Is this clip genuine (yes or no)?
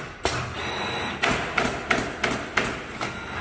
yes